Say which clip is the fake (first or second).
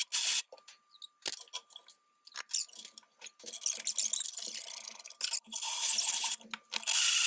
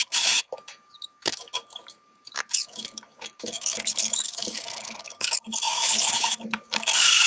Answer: second